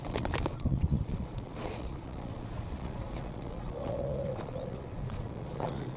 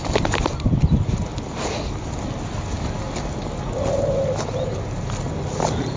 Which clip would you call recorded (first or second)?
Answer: second